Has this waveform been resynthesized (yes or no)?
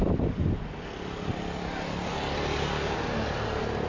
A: no